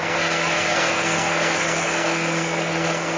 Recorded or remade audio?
remade